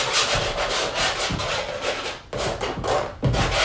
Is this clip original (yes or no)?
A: yes